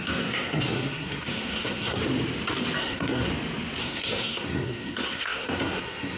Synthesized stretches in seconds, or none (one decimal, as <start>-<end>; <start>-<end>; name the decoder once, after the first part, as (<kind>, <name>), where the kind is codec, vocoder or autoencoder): 0.0-2.0 (codec, SNAC); 2.8-3.3; 3.8-6.2